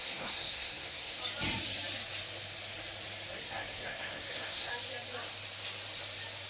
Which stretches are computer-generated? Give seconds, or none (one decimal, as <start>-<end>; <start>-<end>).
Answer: 0.0-1.2; 3.4-4.7